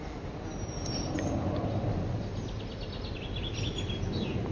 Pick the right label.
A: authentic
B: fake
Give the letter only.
A